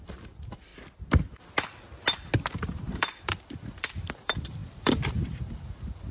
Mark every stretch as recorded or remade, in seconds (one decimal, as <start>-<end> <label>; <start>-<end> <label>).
0.0-0.7 remade; 0.7-2.9 recorded; 2.9-6.1 remade